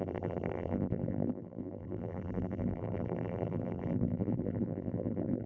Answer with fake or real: fake